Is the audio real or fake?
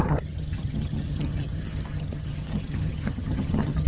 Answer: fake